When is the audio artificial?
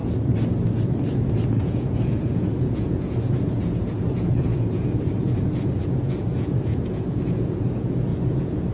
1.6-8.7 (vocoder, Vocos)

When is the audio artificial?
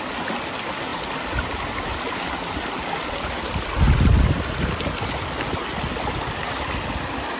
none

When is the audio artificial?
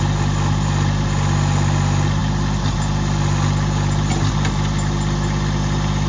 none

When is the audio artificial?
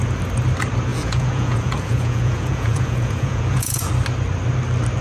0.9-3.9 (vocoder, Vocos)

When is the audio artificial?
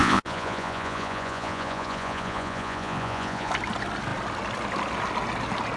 0.0-3.5 (vocoder, Vocos)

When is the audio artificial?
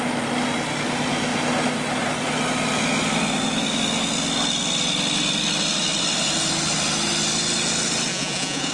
8.1-8.7 (vocoder, Vocos)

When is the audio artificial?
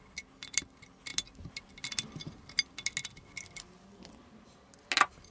none